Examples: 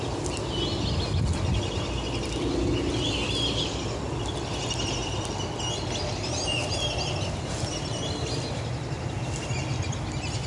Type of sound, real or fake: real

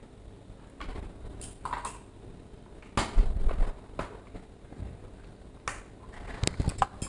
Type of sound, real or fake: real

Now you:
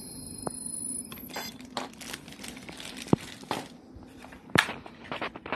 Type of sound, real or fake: fake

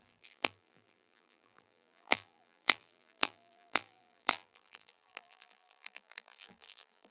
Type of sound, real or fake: fake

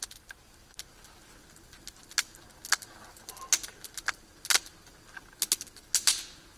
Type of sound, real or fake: real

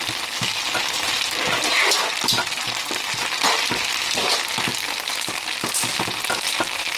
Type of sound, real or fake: real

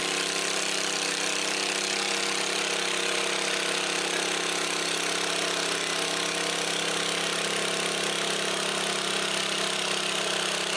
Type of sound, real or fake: real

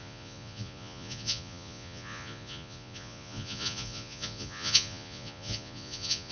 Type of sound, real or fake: fake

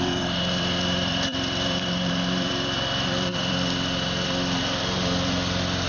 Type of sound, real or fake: fake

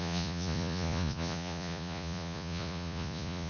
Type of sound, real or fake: fake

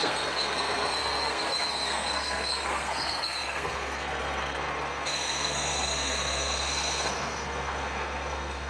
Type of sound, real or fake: fake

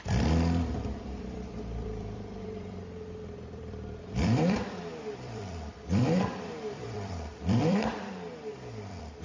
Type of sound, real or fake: fake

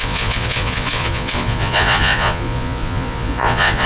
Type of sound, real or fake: fake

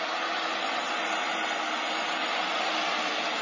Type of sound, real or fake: real